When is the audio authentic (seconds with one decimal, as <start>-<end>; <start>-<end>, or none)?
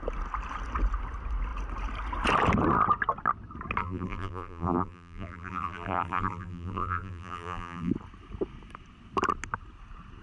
0.0-3.8; 7.9-10.2